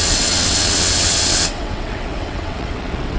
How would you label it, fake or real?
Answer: fake